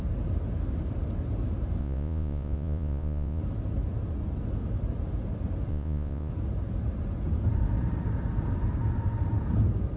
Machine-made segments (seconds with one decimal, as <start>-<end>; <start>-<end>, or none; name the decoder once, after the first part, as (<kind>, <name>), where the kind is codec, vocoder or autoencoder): 1.8-3.4 (vocoder, Vocos); 5.7-6.3